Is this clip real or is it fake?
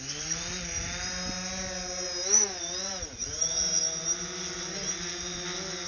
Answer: real